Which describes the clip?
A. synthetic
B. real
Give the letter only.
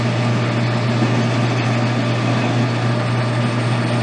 B